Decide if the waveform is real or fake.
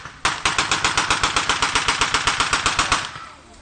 real